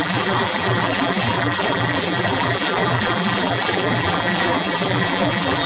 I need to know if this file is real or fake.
fake